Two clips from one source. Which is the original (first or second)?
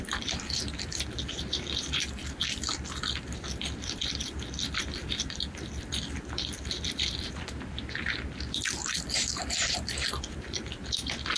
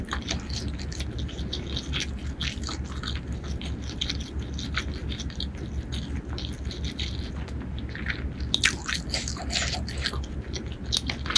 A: second